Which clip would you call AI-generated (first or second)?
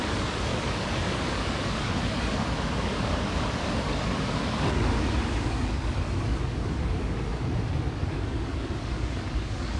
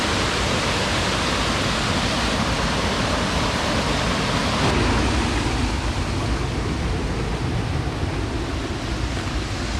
first